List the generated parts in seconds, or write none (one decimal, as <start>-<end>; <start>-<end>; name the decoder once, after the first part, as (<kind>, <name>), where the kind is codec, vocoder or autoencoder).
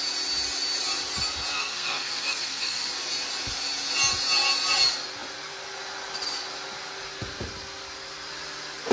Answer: 1.5-2.9 (codec, SNAC)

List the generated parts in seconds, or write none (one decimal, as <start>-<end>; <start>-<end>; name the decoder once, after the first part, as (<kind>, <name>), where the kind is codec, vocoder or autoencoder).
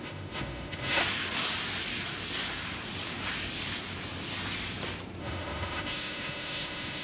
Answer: 0.0-1.0 (autoencoder, DAC-VAE); 5.2-7.0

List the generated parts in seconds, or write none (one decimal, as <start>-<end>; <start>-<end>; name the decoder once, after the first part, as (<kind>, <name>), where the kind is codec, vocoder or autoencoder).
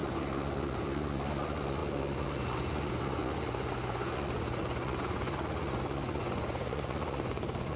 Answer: 0.0-7.8 (vocoder, Vocos)